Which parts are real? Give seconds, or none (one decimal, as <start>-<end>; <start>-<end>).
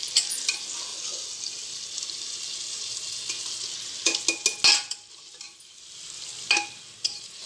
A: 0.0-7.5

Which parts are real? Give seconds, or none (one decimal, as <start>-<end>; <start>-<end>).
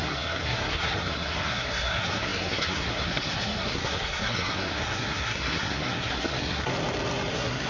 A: 6.7-7.3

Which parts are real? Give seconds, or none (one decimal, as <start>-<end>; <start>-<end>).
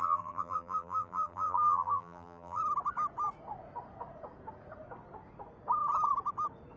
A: 2.6-6.8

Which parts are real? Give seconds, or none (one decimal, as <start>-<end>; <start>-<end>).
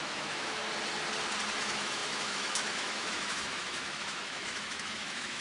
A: 0.6-1.6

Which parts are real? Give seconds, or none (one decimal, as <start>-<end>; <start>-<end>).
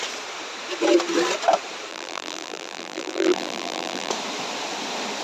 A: 0.0-1.9; 4.1-5.2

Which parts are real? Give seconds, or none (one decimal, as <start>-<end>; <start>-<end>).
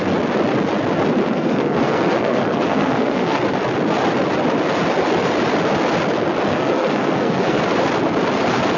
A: 0.0-1.2; 3.4-6.5; 7.6-8.8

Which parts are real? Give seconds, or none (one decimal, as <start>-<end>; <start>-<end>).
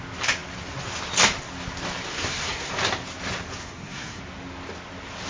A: 0.0-2.1; 2.7-3.6; 4.2-5.3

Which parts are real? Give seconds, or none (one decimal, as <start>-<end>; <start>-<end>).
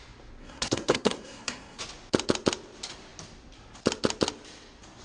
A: 0.0-0.4; 1.8-5.0